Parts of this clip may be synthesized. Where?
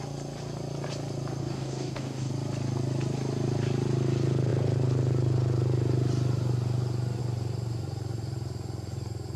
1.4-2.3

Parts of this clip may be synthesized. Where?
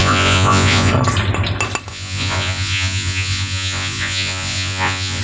0.0-0.9; 1.9-5.2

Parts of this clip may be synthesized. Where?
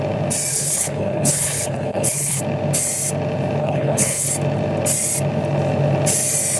0.5-2.4; 3.6-4.3